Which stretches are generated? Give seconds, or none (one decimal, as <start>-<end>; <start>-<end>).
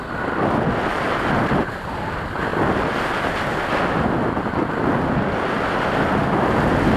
none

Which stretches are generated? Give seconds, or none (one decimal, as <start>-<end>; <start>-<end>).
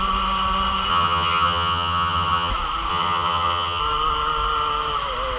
0.9-2.5; 2.9-3.8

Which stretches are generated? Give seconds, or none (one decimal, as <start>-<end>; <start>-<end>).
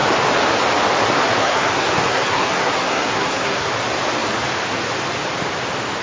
1.4-3.7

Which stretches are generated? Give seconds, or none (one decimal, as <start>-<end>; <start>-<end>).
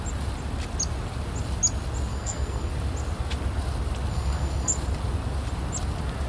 2.1-2.7; 4.1-4.7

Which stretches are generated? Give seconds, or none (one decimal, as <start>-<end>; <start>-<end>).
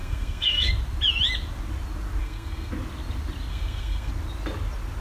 0.0-0.7; 2.2-2.7; 3.5-4.1